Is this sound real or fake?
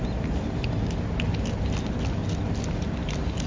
real